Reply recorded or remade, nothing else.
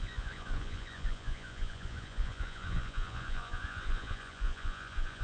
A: remade